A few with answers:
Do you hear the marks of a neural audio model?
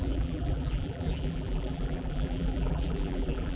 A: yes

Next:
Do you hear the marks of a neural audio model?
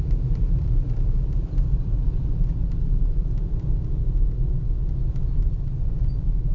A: yes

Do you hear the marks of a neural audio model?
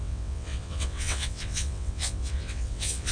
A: yes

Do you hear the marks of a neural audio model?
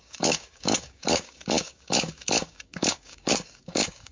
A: yes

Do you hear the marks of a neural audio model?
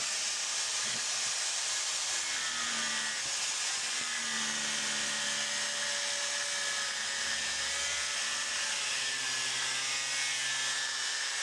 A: no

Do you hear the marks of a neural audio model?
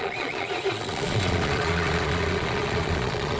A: yes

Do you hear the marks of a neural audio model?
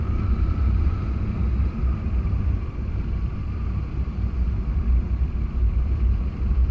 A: yes